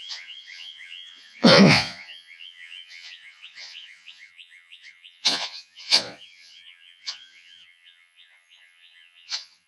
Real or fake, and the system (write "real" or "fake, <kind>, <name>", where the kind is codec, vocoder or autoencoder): fake, vocoder, Vocos